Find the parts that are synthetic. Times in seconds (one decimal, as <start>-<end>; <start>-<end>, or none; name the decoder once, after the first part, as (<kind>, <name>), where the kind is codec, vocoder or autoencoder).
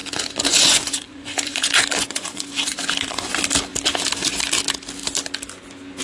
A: 0.0-3.3 (vocoder, Vocos)